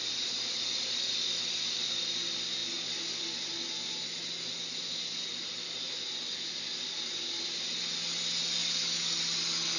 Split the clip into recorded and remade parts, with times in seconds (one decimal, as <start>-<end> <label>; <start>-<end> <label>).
0.0-9.8 recorded